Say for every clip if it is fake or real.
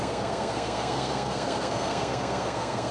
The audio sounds fake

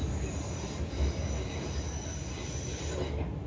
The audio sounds real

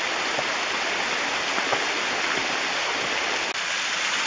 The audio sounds real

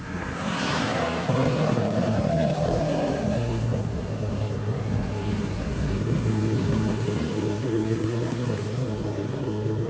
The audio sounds fake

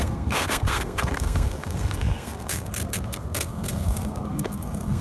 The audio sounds fake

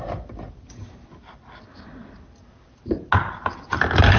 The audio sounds real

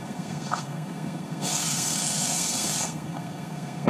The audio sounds fake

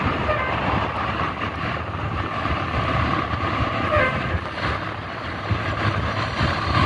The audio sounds real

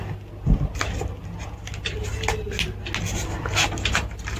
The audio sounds real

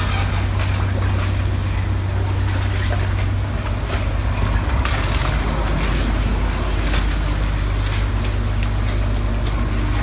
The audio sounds real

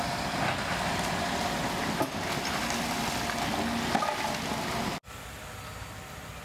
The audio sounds real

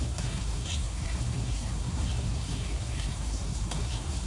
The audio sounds fake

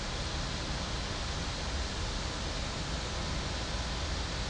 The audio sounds real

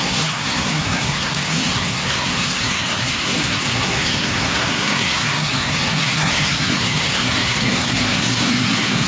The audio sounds fake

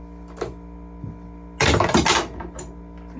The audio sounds real